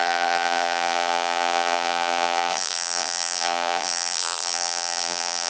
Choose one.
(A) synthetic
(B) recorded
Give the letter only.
A